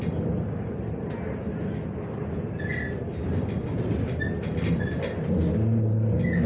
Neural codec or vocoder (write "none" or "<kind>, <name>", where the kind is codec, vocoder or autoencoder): none